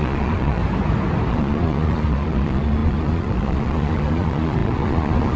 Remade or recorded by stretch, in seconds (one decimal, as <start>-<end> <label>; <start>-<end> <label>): 0.0-0.6 remade; 0.6-1.3 recorded; 1.3-5.4 remade